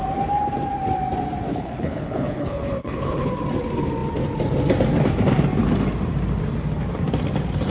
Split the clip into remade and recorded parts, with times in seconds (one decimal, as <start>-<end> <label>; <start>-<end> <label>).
0.0-1.5 recorded; 1.5-3.3 remade; 3.3-7.7 recorded